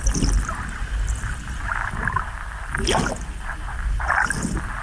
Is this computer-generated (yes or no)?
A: no